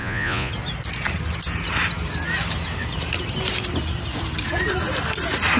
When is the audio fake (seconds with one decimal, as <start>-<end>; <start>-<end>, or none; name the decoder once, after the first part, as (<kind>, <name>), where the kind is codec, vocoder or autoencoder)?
0.0-0.5 (vocoder, Vocos)